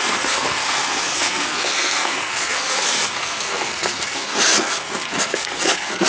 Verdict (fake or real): fake